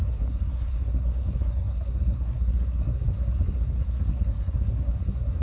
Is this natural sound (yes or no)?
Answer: no